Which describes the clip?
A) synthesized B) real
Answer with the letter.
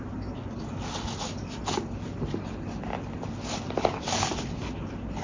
B